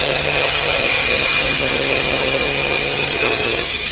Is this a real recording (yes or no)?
no